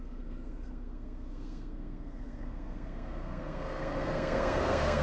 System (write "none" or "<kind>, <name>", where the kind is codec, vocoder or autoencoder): codec, SNAC